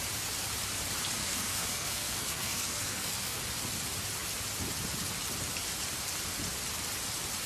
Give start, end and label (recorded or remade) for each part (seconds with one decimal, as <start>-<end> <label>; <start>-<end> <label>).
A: 0.0-1.2 recorded; 1.2-3.4 remade; 3.4-7.5 recorded